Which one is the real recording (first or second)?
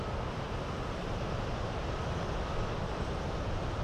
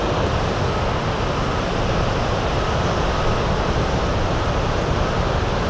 second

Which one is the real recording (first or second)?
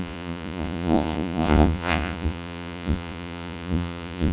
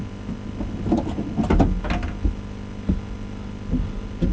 second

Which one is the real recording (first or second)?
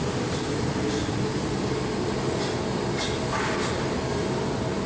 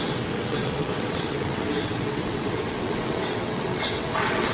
first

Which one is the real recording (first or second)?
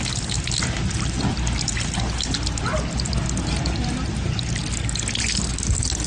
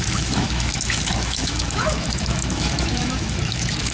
first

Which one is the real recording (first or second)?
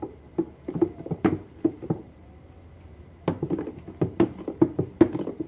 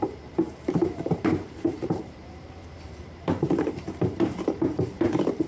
first